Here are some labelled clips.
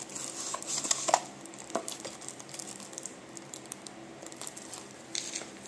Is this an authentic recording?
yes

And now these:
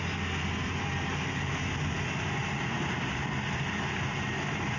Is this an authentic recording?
yes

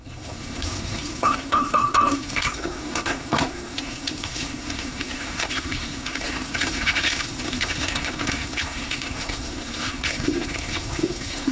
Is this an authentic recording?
no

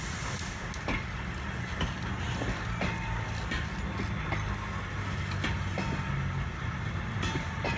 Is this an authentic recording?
yes